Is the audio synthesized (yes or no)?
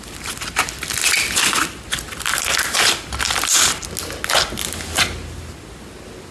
no